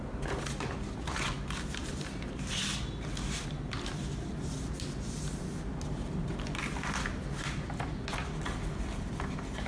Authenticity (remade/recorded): recorded